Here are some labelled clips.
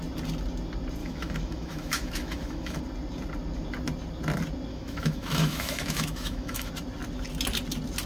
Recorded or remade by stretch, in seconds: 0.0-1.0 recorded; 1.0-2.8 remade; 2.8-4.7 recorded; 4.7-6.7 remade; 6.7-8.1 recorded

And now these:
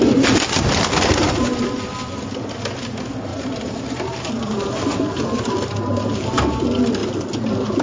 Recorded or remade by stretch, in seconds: 0.0-3.3 recorded; 3.3-6.6 remade; 6.6-7.0 recorded; 7.0-7.8 remade

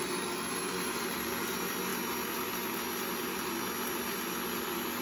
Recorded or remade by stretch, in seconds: 0.0-5.0 recorded

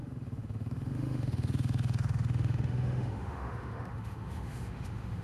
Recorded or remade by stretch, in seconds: 0.0-5.2 remade

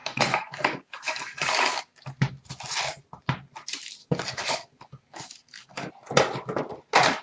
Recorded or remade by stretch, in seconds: 0.0-1.8 remade; 1.8-4.0 recorded; 4.0-5.9 remade; 5.9-7.2 recorded

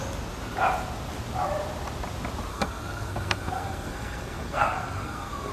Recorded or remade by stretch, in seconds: 0.0-2.5 recorded; 2.5-5.5 remade